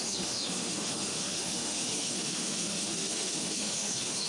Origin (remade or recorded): remade